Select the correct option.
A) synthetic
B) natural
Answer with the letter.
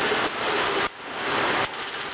B